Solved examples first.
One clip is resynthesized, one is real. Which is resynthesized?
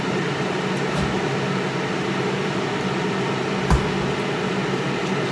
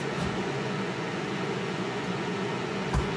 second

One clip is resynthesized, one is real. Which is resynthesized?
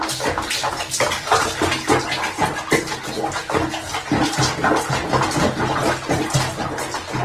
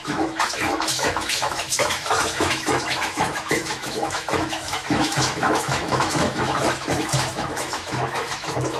second